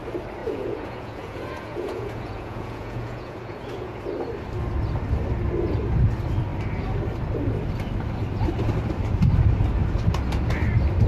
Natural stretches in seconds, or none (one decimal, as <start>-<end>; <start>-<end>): 0.0-0.4; 4.0-11.1